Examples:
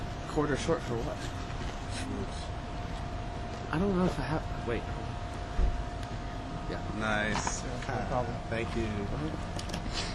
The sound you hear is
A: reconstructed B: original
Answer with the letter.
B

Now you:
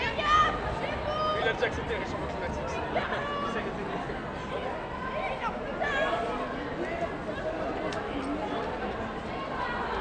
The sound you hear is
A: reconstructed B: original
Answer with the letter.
B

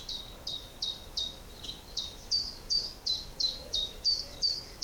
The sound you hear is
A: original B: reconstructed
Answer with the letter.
B